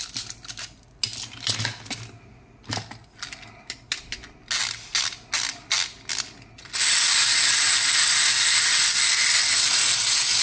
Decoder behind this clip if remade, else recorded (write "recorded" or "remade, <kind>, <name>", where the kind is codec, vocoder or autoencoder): recorded